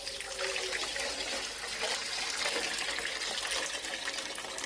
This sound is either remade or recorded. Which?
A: recorded